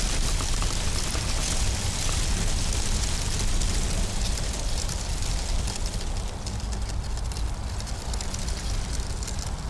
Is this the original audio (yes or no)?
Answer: yes